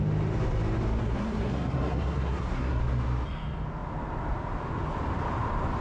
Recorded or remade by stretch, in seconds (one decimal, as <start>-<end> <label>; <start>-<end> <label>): 0.0-1.0 recorded; 1.0-2.8 remade; 2.8-5.8 recorded